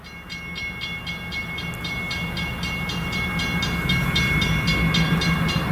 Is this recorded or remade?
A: recorded